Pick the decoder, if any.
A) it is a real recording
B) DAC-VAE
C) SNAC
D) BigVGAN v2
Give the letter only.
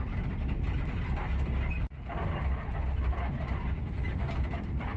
A